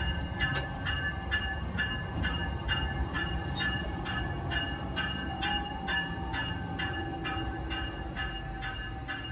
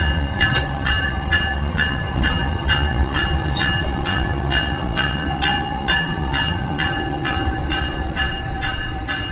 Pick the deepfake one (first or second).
second